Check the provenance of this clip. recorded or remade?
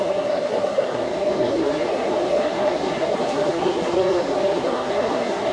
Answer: remade